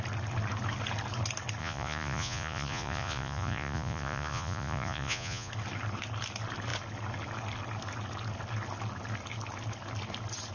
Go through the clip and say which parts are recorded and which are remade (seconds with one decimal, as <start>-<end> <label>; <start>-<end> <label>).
0.0-1.6 recorded; 1.6-5.5 remade; 5.5-10.5 recorded